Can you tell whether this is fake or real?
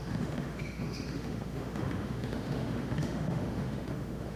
fake